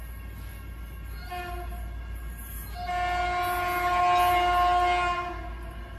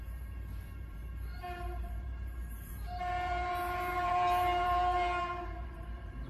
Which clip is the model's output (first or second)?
second